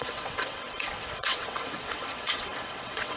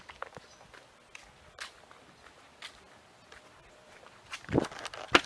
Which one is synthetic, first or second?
first